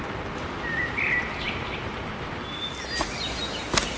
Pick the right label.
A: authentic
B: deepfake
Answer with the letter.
A